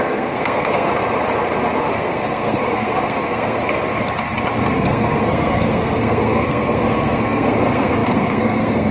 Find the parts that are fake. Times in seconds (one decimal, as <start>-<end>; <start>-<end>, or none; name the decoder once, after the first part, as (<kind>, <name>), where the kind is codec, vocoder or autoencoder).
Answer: 0.0-0.9 (codec, SNAC); 1.9-3.6; 4.7-8.9